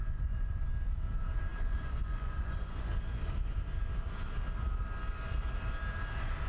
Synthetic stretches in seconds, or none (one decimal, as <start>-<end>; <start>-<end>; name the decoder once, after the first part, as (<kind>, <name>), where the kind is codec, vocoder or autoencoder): 0.0-0.7 (vocoder, Vocos); 1.5-2.9